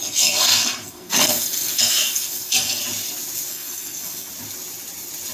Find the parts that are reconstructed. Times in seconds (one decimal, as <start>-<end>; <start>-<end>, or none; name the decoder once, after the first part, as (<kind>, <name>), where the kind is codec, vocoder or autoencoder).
0.0-2.8 (codec, SNAC); 3.5-4.3

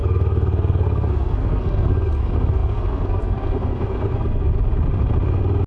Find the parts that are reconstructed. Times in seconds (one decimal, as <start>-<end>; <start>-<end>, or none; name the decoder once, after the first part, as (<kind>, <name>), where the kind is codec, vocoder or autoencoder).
0.0-4.5 (codec, SNAC)